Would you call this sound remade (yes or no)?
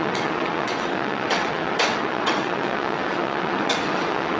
yes